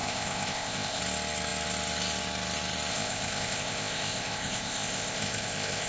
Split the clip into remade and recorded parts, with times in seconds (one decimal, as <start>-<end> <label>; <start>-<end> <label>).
0.0-1.0 remade; 1.0-2.9 recorded; 2.9-5.9 remade